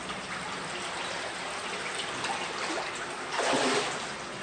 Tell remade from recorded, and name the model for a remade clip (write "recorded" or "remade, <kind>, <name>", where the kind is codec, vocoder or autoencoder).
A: recorded